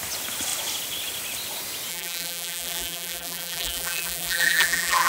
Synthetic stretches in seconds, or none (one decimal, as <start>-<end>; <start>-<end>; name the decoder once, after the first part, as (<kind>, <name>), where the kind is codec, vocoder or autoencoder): 1.9-5.1 (vocoder, BigVGAN v2)